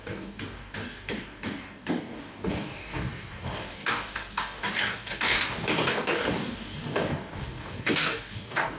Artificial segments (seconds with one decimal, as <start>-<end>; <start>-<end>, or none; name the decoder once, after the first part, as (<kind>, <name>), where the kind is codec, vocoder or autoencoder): 0.0-8.8 (codec, DAC)